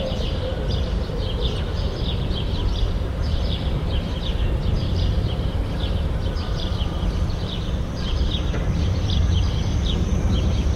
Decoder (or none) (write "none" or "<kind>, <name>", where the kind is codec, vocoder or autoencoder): vocoder, BigVGAN v2